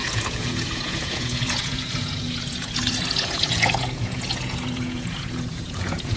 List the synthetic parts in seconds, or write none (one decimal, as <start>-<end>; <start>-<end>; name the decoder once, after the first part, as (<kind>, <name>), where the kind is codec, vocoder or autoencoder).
0.0-6.2 (vocoder, Vocos)